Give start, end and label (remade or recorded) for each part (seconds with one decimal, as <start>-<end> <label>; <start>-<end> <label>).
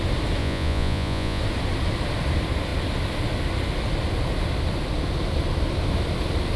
0.0-0.4 recorded; 0.4-1.4 remade; 1.4-6.6 recorded